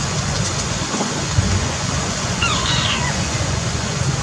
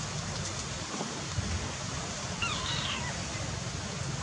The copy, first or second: first